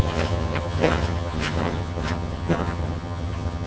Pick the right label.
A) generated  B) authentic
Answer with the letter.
A